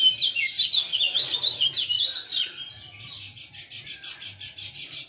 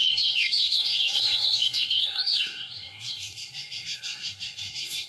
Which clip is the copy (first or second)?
second